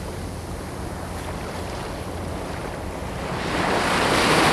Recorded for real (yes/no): yes